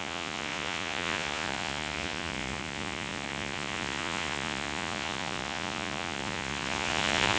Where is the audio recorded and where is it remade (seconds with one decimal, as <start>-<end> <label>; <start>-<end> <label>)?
0.0-7.4 remade